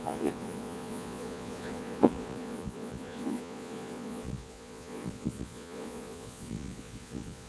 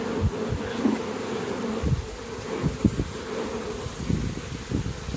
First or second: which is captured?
second